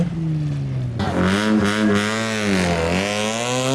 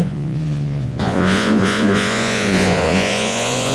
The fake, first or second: second